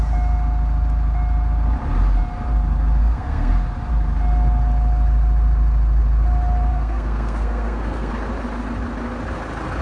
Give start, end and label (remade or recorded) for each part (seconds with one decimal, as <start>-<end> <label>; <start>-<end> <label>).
0.0-3.0 recorded; 3.0-3.5 remade; 3.5-6.7 recorded; 6.7-8.1 remade; 8.1-9.8 recorded